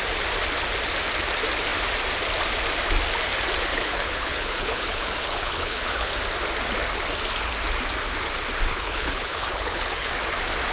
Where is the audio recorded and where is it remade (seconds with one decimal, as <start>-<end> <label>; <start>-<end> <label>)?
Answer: 0.0-3.7 recorded; 3.7-6.1 remade; 6.1-8.7 recorded; 8.7-10.1 remade; 10.1-10.7 recorded